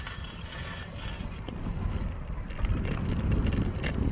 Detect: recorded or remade recorded